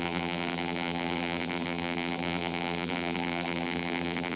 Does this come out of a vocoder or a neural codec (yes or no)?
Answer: yes